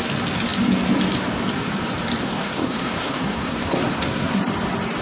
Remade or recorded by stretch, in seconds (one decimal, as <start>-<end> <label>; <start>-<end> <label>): 0.0-2.2 recorded; 2.2-4.4 remade; 4.4-5.0 recorded